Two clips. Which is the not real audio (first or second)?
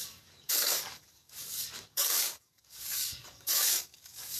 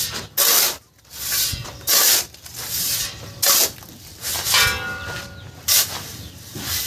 first